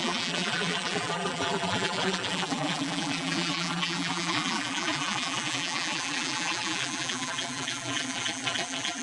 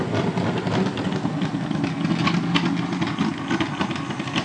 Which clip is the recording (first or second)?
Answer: second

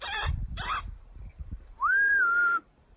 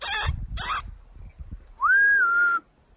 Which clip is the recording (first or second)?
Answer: second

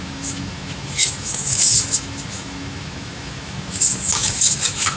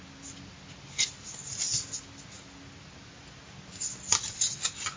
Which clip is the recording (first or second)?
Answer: second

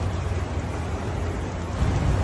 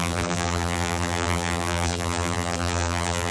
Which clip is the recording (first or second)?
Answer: first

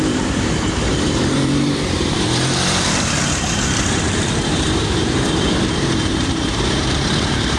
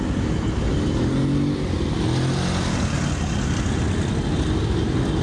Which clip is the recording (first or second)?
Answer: second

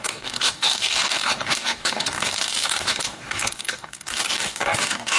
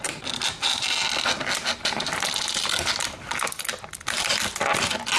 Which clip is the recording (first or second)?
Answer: second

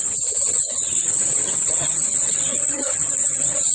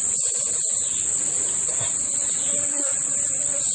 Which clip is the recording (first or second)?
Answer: second